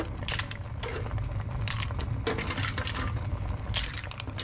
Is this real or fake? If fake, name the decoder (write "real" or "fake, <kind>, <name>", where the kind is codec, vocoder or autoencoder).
real